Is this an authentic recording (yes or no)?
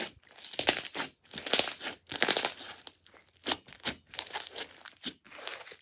yes